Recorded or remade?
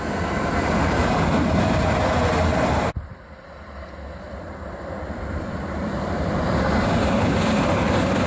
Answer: remade